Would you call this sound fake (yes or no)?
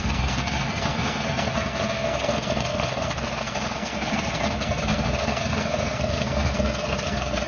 yes